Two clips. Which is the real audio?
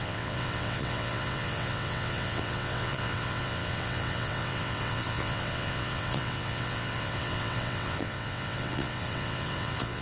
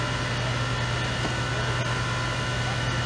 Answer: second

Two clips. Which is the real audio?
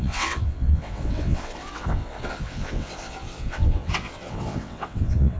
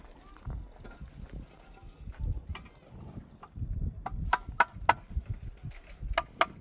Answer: second